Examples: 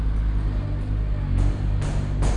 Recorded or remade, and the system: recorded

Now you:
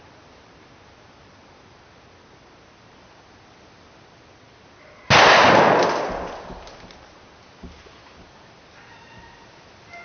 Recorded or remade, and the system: recorded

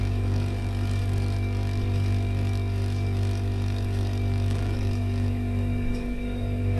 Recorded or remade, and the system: remade, codec, DAC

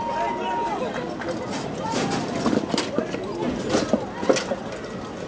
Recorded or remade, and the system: recorded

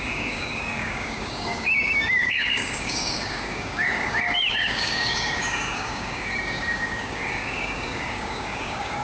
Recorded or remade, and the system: remade, codec, DAC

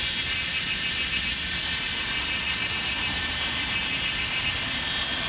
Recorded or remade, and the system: recorded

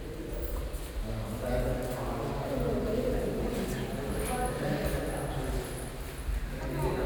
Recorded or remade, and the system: recorded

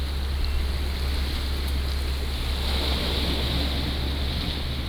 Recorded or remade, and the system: recorded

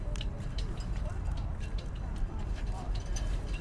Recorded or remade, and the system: remade, vocoder, BigVGAN v2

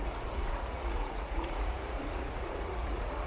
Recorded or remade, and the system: remade, vocoder, Vocos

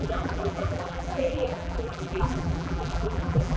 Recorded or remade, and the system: remade, vocoder, BigVGAN v2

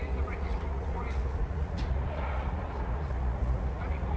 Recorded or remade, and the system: remade, vocoder, Vocos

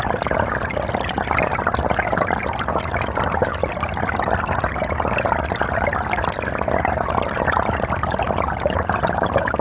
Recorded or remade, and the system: recorded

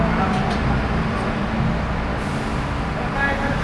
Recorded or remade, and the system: recorded